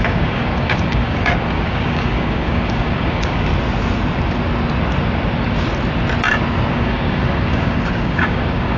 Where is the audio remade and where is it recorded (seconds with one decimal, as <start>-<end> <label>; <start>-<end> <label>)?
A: 0.0-3.5 remade; 3.5-6.7 recorded; 6.7-8.8 remade